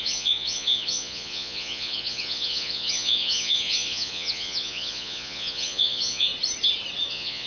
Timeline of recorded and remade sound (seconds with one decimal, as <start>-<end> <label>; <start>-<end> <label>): 0.0-6.3 remade; 6.3-7.1 recorded; 7.1-7.5 remade